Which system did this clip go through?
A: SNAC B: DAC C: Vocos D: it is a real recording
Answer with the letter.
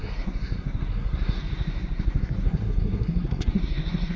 A